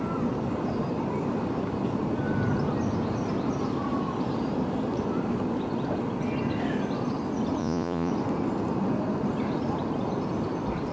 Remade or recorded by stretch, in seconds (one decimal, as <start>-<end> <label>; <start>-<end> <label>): 0.0-7.6 recorded; 7.6-8.1 remade; 8.1-10.9 recorded